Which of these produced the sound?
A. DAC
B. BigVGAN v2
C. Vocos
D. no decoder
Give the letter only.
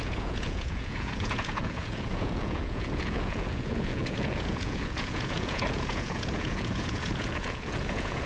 C